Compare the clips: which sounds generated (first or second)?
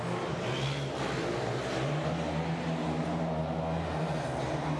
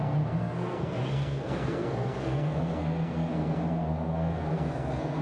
second